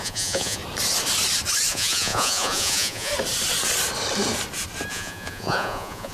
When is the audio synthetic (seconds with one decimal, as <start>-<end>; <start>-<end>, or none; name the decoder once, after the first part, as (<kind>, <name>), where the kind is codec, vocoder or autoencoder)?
0.0-0.6 (vocoder, Vocos); 1.7-3.1; 4.9-6.1

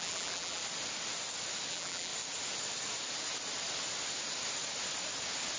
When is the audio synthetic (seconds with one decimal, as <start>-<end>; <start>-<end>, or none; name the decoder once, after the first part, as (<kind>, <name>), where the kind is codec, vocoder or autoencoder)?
0.0-0.6 (vocoder, BigVGAN v2); 1.7-2.1

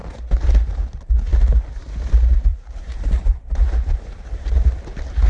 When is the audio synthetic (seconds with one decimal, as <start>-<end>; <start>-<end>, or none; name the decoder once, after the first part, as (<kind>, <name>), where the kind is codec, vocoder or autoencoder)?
2.5-5.3 (vocoder, BigVGAN v2)

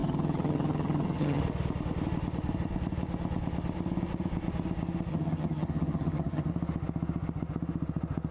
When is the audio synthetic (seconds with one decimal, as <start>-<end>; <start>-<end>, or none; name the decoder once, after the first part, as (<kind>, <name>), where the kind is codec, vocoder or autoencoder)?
0.0-1.4 (vocoder, HiFi-GAN); 5.1-6.5

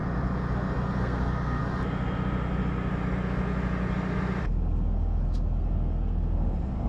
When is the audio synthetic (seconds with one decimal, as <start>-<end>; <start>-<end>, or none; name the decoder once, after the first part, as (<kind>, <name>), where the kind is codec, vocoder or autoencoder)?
1.0-1.6 (codec, SNAC); 4.4-6.9

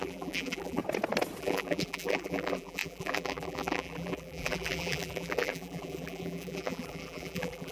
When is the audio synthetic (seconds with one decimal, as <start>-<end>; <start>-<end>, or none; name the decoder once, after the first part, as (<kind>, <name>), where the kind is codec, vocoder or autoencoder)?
0.0-0.8 (vocoder, BigVGAN v2); 1.4-7.7